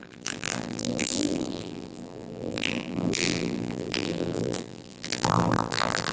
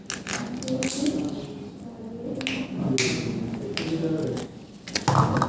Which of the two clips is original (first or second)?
second